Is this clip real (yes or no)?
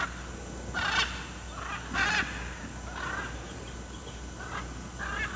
yes